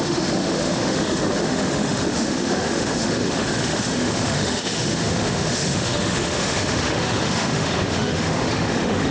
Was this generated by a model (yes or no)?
yes